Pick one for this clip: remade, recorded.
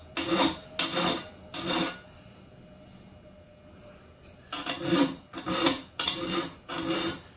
recorded